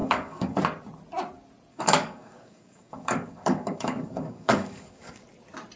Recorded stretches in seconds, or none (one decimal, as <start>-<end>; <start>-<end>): 0.6-1.7; 5.2-5.8

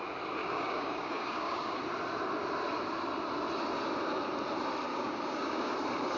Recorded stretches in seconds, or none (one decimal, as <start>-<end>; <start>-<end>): 0.0-0.4; 1.8-4.9; 5.7-6.2

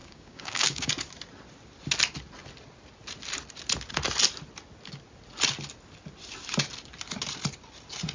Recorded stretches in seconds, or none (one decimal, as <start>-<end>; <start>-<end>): 0.9-8.1

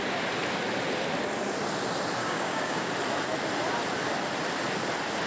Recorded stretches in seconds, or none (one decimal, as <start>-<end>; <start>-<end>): 0.0-2.2; 2.9-5.3